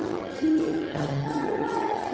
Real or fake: fake